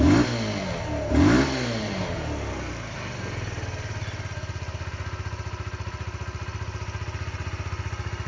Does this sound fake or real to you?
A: real